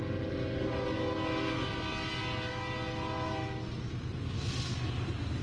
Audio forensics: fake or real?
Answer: real